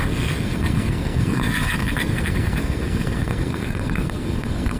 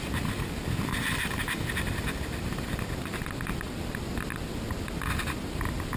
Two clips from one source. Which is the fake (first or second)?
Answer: first